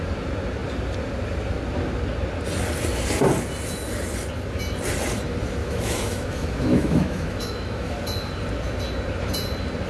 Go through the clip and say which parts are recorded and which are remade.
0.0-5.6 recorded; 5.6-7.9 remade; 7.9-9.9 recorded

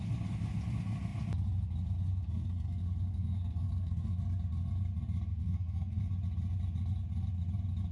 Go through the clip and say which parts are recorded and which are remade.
0.0-2.1 recorded; 2.1-4.2 remade; 4.2-5.3 recorded; 5.3-6.0 remade; 6.0-7.9 recorded